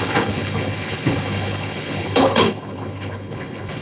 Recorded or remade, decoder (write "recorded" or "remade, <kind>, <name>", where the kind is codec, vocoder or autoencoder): remade, codec, HILCodec